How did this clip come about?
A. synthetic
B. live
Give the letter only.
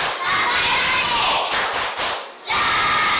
B